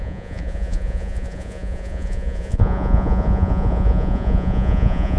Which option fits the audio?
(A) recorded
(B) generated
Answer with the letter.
B